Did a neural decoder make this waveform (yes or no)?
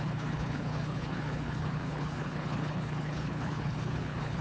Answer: yes